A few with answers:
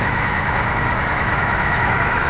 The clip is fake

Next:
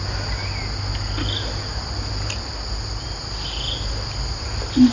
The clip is real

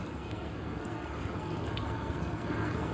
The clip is fake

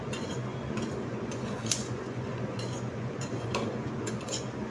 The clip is fake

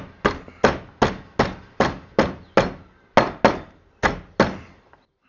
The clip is real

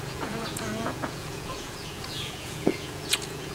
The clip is fake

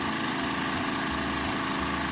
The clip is real